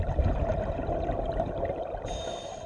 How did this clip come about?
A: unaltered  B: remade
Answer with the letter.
B